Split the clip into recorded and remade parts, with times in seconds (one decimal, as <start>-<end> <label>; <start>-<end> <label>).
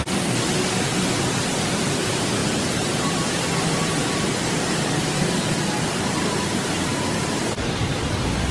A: 0.0-8.5 recorded